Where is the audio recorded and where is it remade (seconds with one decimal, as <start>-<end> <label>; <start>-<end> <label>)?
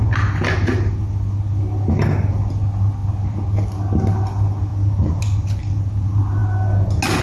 0.0-7.2 recorded